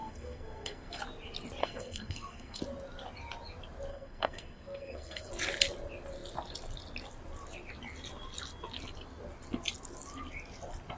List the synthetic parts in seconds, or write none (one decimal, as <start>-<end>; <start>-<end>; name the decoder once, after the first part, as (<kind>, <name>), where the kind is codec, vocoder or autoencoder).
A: 0.0-1.0 (codec, SNAC); 1.6-2.6; 3.9-5.3